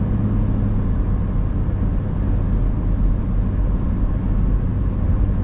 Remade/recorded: recorded